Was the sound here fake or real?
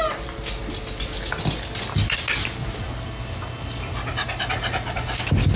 real